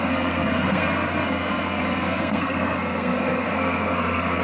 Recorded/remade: remade